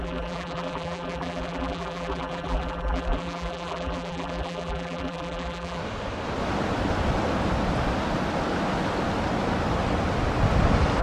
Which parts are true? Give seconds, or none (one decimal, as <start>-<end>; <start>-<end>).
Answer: 5.8-11.0